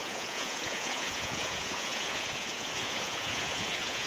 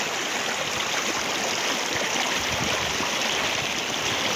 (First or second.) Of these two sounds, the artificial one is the first